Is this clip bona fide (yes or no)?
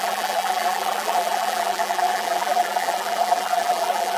no